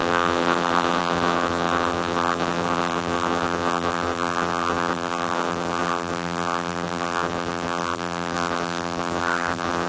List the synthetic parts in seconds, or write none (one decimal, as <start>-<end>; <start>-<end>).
0.0-9.9

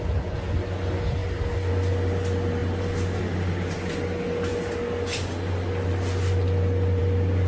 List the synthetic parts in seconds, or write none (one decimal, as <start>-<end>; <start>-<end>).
none

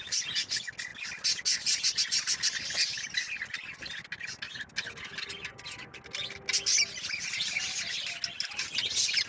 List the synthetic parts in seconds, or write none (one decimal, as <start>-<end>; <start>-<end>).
none

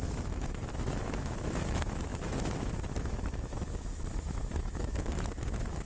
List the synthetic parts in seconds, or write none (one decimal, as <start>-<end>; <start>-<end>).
0.0-5.9

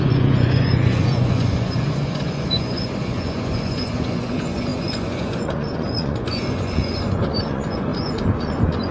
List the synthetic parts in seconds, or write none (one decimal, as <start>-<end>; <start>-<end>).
0.0-8.9

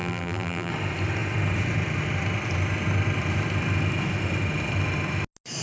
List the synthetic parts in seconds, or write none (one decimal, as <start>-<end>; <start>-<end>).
0.0-0.7

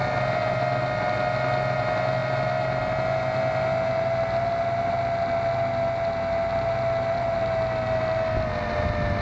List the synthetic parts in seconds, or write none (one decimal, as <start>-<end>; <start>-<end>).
none

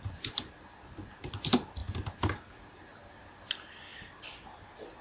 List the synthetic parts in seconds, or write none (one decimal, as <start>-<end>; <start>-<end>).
none